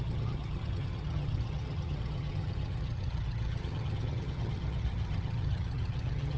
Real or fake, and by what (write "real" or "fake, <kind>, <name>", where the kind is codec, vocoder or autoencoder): fake, vocoder, HiFi-GAN